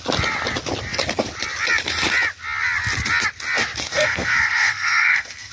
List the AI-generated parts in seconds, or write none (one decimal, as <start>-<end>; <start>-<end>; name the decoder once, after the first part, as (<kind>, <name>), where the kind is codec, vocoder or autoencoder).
3.9-5.5 (codec, SNAC)